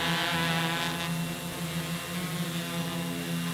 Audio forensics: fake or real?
real